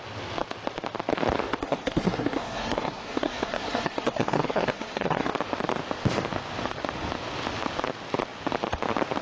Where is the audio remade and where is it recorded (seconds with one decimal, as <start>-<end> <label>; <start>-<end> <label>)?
0.0-1.6 recorded; 1.6-5.3 remade; 5.3-9.2 recorded